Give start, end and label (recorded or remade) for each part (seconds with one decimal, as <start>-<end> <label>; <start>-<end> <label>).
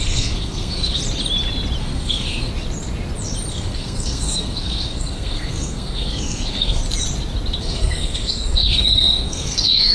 0.0-1.0 remade; 1.0-1.8 recorded; 1.8-2.5 remade; 2.5-3.5 recorded; 3.5-6.8 remade; 6.8-7.6 recorded; 7.6-9.9 remade